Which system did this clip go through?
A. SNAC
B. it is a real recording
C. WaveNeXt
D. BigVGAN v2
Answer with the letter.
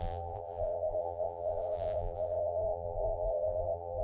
D